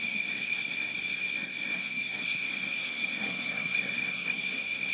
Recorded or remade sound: remade